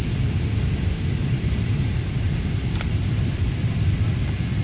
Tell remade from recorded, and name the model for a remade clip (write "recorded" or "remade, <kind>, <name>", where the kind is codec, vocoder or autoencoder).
remade, vocoder, BigVGAN v2